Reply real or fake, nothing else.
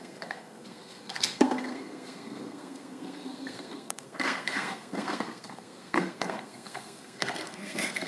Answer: fake